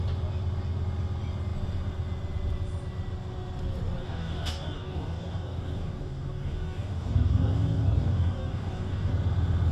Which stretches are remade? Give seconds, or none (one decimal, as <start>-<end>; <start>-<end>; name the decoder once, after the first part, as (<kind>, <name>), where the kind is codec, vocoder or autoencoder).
4.0-9.1 (codec, DAC)